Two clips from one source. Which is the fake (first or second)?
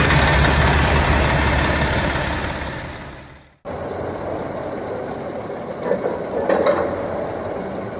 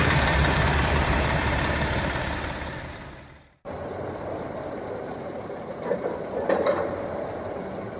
second